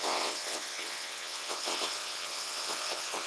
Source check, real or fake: fake